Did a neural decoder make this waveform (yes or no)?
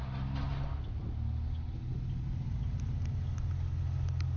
no